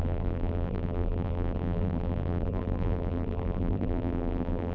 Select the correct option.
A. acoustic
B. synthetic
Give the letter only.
B